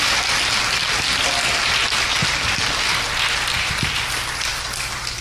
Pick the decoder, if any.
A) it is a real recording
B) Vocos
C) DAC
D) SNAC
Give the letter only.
A